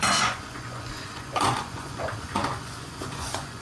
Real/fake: fake